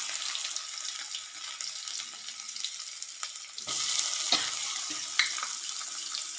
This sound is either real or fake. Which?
real